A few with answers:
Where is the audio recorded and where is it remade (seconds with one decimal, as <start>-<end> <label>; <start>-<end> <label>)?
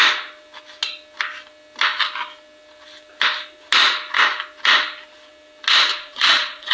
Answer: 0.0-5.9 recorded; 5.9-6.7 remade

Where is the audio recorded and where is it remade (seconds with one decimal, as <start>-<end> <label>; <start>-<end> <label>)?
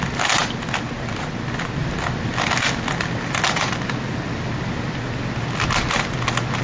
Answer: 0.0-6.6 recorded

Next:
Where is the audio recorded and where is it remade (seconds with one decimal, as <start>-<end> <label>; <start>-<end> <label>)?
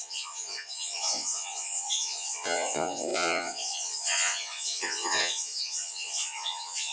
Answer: 0.0-6.9 remade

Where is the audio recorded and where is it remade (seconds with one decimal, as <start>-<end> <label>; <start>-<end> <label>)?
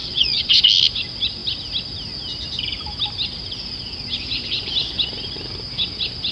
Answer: 0.0-0.6 remade; 0.6-6.3 recorded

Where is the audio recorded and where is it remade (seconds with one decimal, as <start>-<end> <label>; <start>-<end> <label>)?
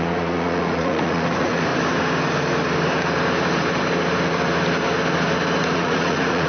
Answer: 0.0-1.7 remade; 1.7-5.6 recorded; 5.6-6.5 remade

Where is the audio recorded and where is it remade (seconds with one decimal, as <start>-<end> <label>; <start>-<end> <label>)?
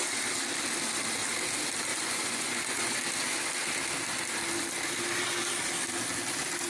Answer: 0.0-1.9 recorded; 1.9-3.0 remade; 3.0-6.7 recorded